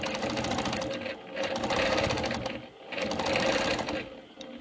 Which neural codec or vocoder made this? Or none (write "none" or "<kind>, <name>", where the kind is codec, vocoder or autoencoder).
none